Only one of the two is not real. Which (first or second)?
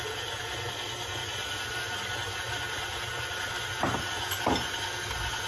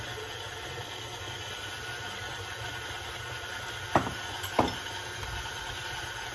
second